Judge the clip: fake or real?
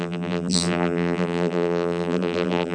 fake